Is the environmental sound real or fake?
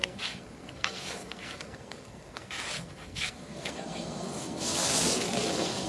fake